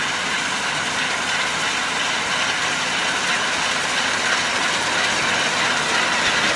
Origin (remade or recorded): recorded